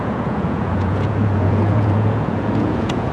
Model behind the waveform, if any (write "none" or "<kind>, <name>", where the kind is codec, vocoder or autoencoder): vocoder, Vocos